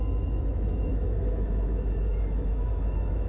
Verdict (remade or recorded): remade